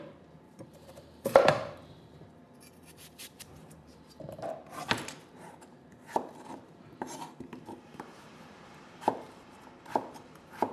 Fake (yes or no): yes